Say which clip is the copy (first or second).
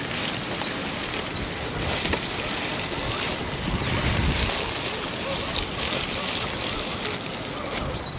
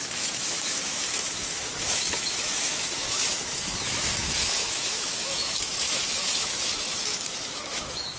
second